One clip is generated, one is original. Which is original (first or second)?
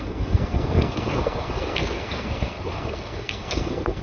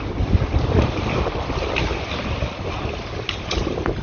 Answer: second